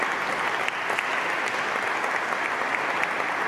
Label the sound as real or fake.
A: real